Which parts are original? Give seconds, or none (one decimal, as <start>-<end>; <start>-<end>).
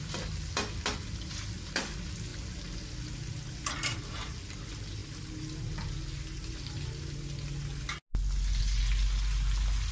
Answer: 0.0-9.9